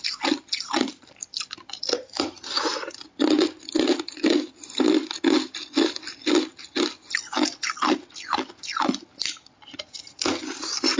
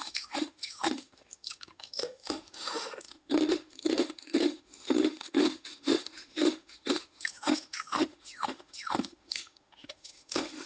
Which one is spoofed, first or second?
second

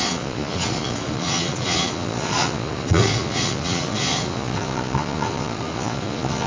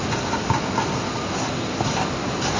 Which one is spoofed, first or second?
first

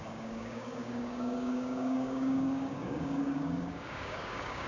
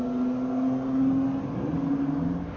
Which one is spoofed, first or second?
first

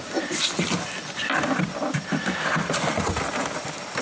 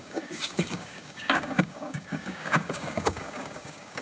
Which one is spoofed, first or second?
second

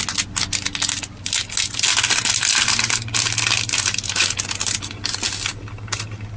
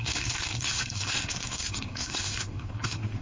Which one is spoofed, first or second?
second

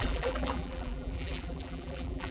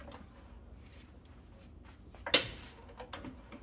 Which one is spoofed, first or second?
first